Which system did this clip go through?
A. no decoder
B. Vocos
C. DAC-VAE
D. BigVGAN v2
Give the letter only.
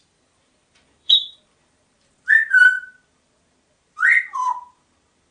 D